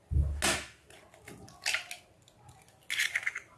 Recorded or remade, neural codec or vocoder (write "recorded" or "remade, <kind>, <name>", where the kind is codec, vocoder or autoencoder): recorded